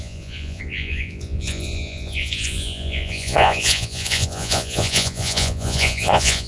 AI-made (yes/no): yes